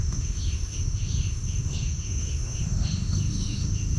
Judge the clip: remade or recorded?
remade